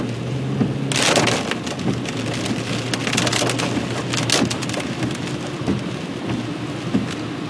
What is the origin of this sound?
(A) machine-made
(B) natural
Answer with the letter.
B